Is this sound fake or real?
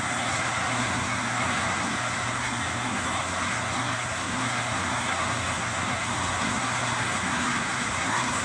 fake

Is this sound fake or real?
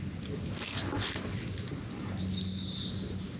real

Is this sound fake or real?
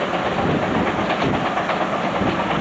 real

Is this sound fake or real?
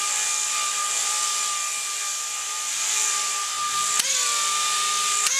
real